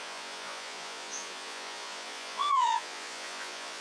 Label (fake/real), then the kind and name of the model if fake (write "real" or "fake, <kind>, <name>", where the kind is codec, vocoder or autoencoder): fake, vocoder, Vocos